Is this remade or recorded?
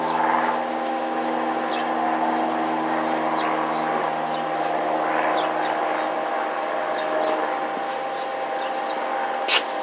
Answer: recorded